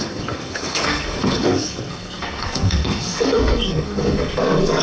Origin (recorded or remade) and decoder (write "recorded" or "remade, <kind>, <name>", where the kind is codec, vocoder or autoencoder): remade, codec, SNAC